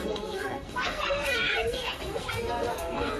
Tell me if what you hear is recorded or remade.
remade